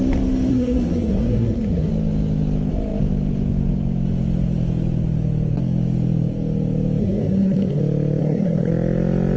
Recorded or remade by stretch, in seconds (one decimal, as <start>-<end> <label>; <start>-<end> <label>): 0.0-0.5 recorded; 0.5-1.9 remade; 1.9-7.0 recorded; 7.0-7.8 remade; 7.8-8.2 recorded; 8.2-8.7 remade; 8.7-9.4 recorded